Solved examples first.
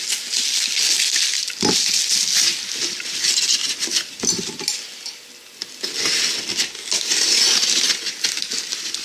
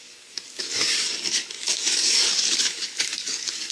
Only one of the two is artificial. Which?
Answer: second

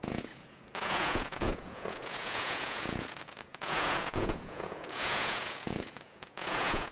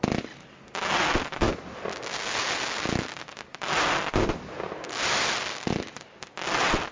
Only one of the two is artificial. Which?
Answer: first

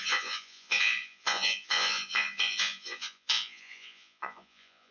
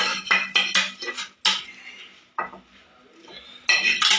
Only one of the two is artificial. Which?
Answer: first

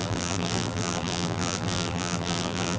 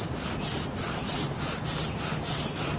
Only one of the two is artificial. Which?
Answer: first